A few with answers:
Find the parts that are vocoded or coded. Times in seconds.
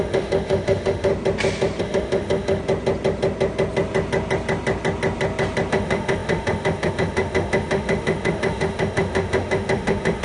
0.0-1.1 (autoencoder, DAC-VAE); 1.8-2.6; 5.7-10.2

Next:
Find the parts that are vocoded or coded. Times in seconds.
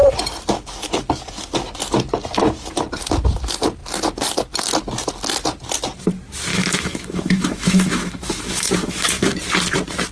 6.5-9.4 (autoencoder, DAC-VAE)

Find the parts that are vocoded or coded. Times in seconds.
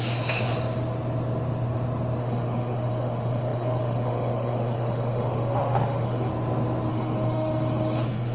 0.0-0.5 (autoencoder, DAC-VAE); 2.2-6.3; 6.9-8.3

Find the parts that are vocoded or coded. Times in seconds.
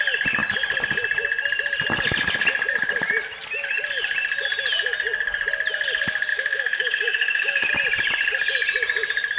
6.3-7.7 (autoencoder, DAC-VAE)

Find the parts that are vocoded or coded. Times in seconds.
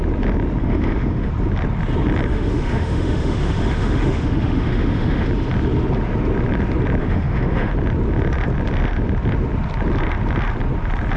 0.6-1.3 (autoencoder, DAC-VAE); 2.3-5.3; 7.0-7.7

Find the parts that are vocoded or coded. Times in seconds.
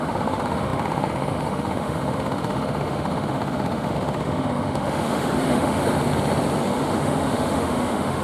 0.0-5.8 (autoencoder, DAC-VAE); 6.6-8.2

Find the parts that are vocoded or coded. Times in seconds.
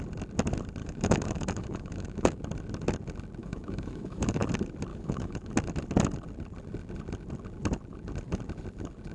0.8-2.4 (autoencoder, DAC-VAE); 3.4-4.4; 4.9-5.5